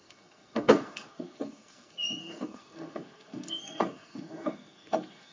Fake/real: fake